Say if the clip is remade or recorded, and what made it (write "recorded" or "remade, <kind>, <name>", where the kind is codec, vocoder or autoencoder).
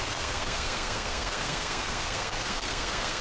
remade, codec, SNAC